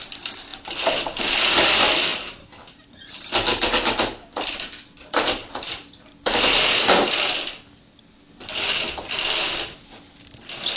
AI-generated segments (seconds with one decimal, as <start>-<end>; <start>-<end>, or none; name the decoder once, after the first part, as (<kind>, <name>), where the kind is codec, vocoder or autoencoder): none